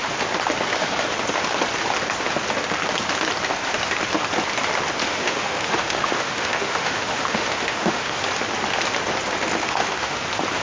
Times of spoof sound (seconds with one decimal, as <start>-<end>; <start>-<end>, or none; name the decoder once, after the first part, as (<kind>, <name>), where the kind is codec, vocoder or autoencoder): 5.0-8.2 (autoencoder, DAC-VAE); 9.6-10.2